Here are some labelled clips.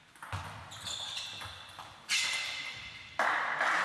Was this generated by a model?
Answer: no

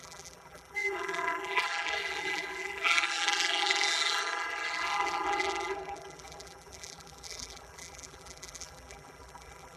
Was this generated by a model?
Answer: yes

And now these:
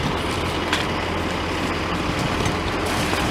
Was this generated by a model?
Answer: no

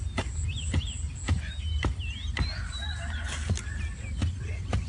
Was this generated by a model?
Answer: no